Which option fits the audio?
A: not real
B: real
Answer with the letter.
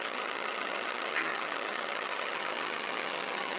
A